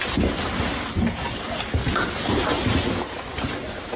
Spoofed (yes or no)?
no